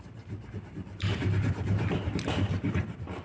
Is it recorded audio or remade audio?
recorded